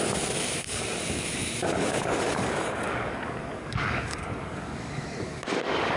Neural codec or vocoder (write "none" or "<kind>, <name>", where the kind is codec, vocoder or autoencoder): codec, DAC